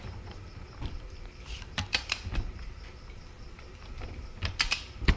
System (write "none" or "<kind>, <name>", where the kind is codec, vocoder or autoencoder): vocoder, BigVGAN v2